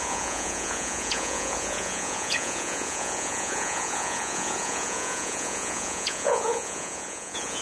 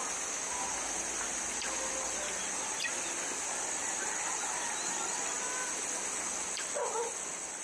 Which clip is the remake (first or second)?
first